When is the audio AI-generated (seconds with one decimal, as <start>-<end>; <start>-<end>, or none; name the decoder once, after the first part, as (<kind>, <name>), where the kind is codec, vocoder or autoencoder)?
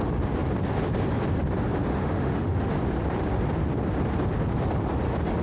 2.0-2.7 (autoencoder, DAC-VAE)